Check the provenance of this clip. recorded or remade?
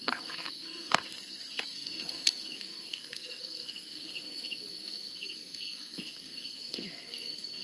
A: remade